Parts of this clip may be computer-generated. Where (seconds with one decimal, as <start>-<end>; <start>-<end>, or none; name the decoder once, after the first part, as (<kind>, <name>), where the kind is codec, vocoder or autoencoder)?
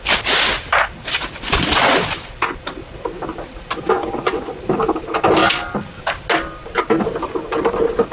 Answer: 4.0-4.6 (vocoder, Vocos)